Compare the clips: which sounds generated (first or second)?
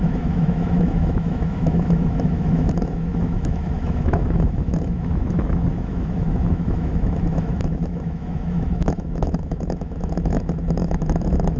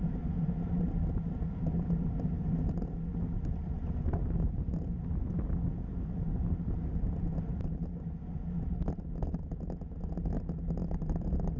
first